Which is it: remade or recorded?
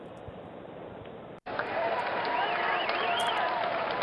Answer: remade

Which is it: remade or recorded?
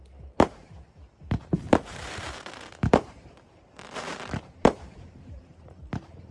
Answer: remade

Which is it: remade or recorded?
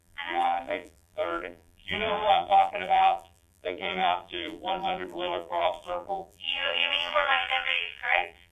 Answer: remade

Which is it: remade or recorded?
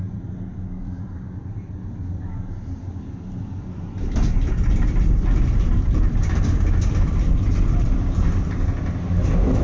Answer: remade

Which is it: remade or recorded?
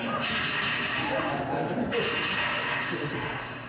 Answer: recorded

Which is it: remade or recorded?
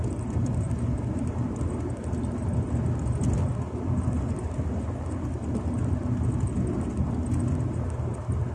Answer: recorded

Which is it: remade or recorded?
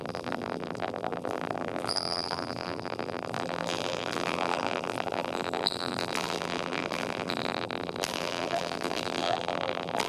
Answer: remade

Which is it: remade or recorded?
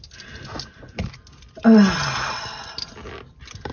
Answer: recorded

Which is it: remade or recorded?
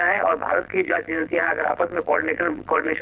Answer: remade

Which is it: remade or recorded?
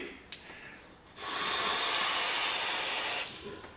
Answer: recorded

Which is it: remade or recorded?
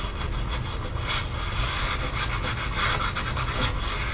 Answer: recorded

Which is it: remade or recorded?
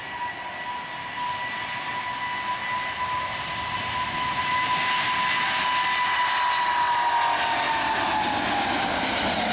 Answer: recorded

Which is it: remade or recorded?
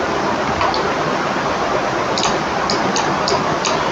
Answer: recorded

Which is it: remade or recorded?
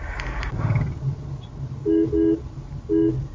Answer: recorded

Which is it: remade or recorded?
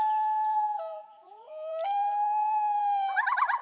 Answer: remade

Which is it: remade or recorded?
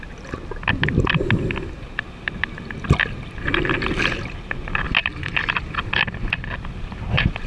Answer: recorded